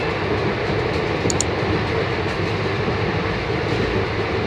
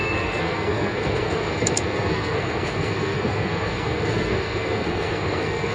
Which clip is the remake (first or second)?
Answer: second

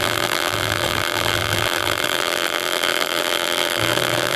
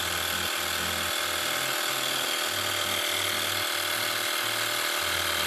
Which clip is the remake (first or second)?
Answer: first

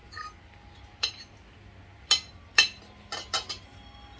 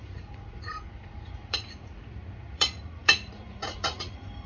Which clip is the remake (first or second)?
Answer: second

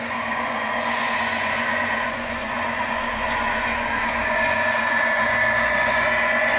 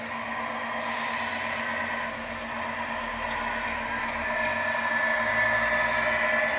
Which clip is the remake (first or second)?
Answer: first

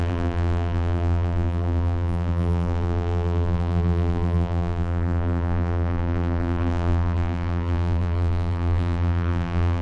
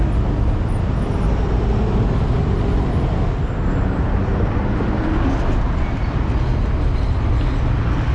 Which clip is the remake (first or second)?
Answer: first